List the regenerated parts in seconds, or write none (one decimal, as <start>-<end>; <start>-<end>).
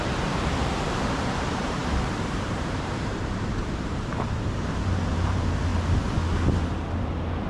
0.0-5.7; 7.0-7.5